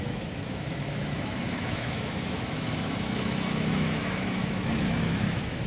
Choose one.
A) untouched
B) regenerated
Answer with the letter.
B